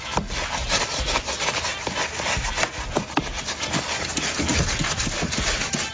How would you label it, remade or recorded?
recorded